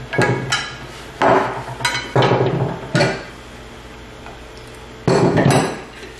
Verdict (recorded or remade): recorded